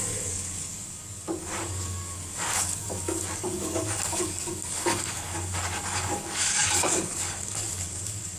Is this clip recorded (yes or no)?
no